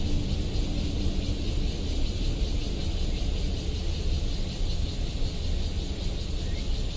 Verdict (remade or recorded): recorded